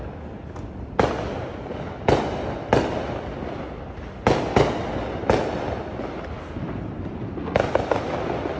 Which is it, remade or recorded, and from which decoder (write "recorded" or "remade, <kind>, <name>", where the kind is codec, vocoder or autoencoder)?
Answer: recorded